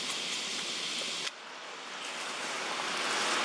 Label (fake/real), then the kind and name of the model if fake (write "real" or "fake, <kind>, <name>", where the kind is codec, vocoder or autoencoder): real